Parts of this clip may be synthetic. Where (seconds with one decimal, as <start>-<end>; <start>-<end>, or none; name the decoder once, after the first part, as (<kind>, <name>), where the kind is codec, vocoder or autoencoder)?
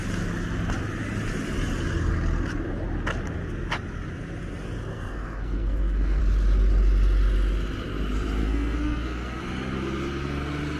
4.9-6.2 (codec, SNAC); 8.4-9.4